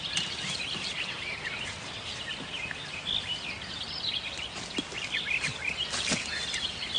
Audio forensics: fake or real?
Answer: real